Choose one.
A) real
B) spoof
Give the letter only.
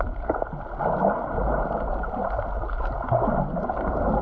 A